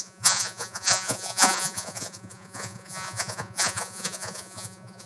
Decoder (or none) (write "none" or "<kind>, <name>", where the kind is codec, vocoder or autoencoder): vocoder, Vocos